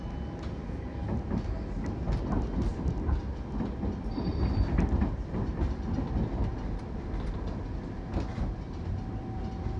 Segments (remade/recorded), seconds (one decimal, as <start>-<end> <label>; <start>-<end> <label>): 0.0-2.7 recorded; 2.7-5.6 remade; 5.6-6.5 recorded; 6.5-7.5 remade; 7.5-8.3 recorded; 8.3-9.4 remade; 9.4-9.8 recorded